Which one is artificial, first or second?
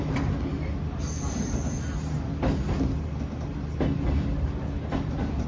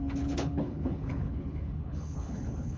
second